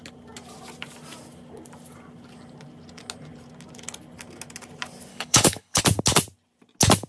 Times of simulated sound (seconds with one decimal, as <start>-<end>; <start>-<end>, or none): 5.1-5.8